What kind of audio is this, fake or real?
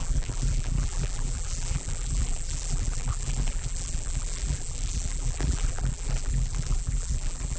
fake